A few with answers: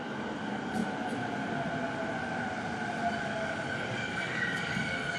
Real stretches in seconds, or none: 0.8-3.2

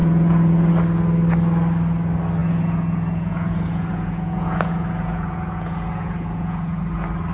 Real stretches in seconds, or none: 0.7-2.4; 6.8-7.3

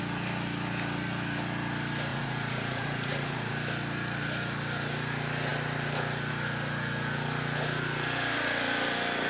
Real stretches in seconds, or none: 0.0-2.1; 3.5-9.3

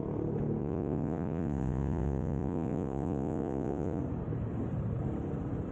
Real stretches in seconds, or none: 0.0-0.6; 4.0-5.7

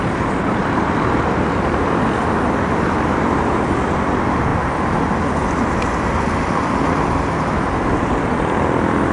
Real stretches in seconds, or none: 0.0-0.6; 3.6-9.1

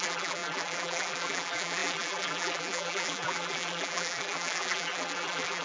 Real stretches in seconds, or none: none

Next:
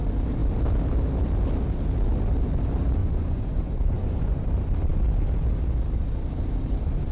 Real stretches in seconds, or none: 0.0-3.0; 4.4-7.1

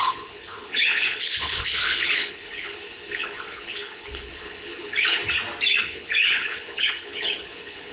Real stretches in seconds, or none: 5.2-5.8